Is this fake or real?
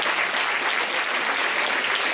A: real